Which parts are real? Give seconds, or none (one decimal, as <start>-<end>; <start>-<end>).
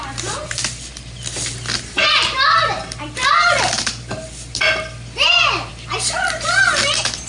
0.0-7.3